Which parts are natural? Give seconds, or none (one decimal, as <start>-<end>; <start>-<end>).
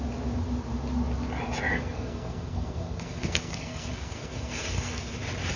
0.0-1.7; 5.1-5.6